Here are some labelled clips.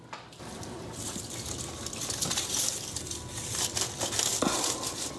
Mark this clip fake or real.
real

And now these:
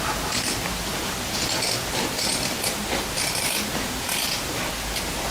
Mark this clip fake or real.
real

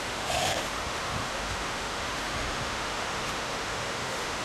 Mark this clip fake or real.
fake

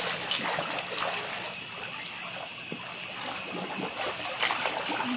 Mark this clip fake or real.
real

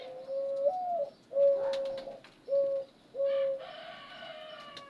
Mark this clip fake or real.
real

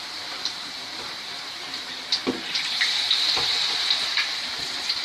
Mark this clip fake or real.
fake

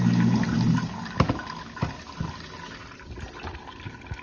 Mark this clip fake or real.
real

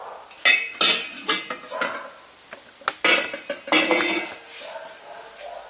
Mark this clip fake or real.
real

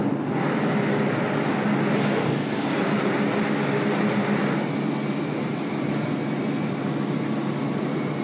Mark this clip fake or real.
real